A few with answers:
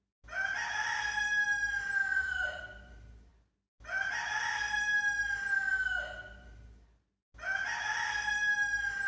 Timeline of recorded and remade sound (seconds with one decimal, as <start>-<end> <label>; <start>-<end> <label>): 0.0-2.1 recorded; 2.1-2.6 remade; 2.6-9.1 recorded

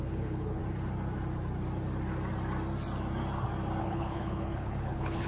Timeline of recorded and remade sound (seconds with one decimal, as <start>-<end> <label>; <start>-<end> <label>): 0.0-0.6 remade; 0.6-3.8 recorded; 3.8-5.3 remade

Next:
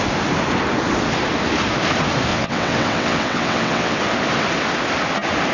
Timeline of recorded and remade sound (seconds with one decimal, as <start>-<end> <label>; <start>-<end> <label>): 0.0-2.3 recorded; 2.3-4.0 remade; 4.0-5.5 recorded